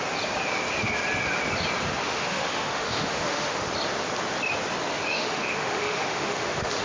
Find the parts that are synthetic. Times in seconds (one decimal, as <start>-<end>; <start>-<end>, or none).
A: 2.0-3.6; 4.9-6.8